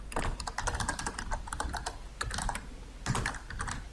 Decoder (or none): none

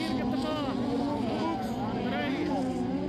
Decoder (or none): none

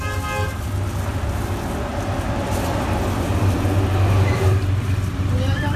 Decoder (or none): none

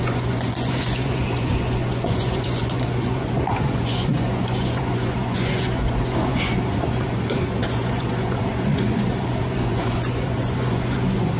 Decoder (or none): vocoder, Vocos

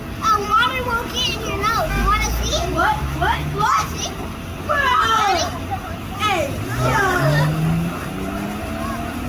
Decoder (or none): none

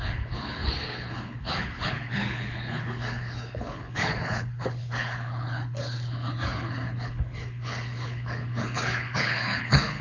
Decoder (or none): codec, HILCodec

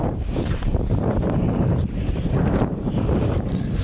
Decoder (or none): vocoder, BigVGAN v2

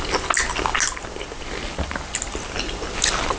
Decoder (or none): none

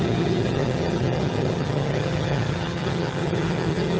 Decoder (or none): vocoder, HiFi-GAN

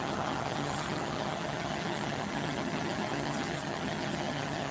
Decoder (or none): vocoder, HiFi-GAN